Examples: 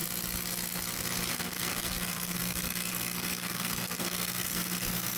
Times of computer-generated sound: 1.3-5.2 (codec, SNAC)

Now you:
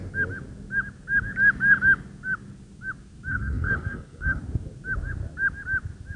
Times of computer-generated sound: 3.3-4.4 (codec, SNAC)

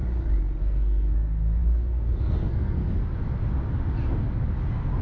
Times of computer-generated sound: 0.6-2.8 (codec, SNAC)